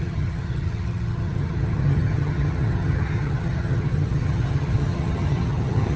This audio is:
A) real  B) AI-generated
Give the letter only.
B